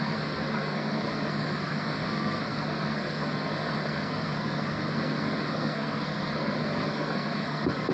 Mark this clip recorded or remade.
remade